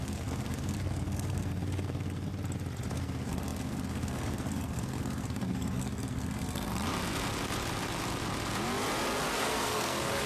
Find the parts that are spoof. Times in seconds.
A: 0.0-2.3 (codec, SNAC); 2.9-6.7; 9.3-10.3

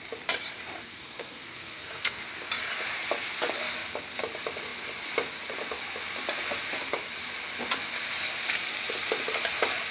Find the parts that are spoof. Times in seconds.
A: 0.8-2.2 (codec, SNAC)

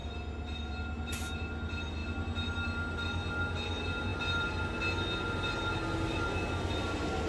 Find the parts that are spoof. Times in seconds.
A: none

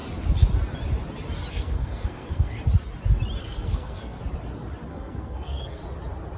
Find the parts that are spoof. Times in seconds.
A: 1.5-2.5 (codec, SNAC); 3.4-4.2; 4.9-5.8

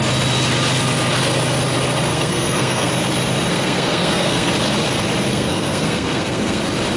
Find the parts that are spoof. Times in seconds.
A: 2.1-2.9 (codec, SNAC); 3.5-4.5; 5.3-6.6

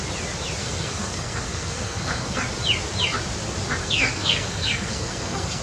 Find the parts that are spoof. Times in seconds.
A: 0.6-2.4 (codec, SNAC); 3.8-5.6